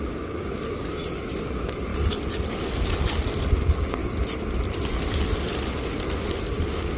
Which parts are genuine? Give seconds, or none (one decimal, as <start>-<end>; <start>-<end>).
1.9-3.6; 4.0-6.5